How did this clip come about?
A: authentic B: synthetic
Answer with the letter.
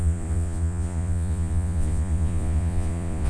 B